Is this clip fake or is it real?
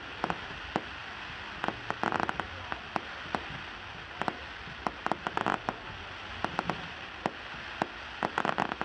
real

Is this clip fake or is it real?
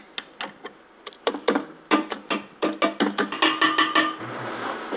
real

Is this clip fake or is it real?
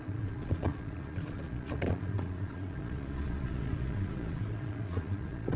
fake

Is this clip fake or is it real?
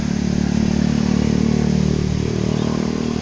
real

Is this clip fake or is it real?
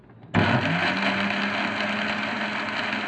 real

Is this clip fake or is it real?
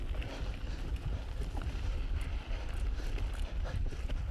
real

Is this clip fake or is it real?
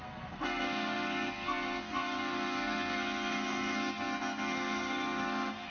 fake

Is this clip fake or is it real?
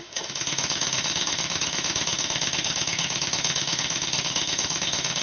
fake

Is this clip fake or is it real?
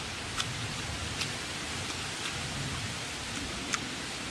real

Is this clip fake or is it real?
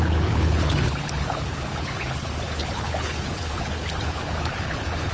fake